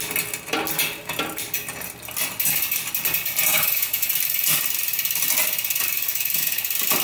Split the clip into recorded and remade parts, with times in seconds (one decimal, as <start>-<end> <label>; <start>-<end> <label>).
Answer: 0.0-3.5 recorded; 3.5-4.1 remade; 4.1-6.1 recorded; 6.1-6.6 remade; 6.6-7.0 recorded